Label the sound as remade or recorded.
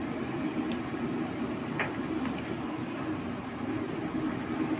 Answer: recorded